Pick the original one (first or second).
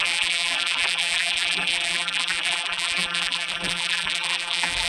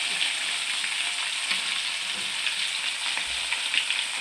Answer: second